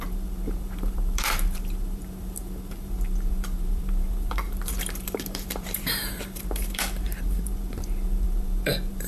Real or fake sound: fake